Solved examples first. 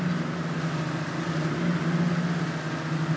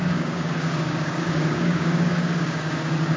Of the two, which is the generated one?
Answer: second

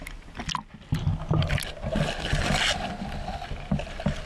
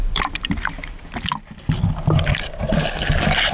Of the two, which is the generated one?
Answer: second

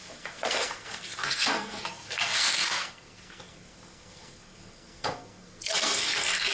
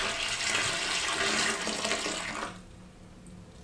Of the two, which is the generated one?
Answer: first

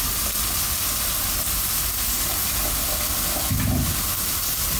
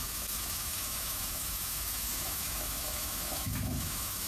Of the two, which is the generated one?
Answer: second